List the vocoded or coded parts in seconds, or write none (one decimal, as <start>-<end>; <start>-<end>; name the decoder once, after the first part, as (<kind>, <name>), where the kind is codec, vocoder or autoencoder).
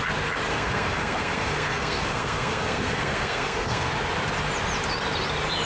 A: 0.5-3.9 (codec, SNAC)